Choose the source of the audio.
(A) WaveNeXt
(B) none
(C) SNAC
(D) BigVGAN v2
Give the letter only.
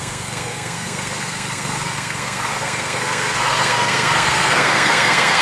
C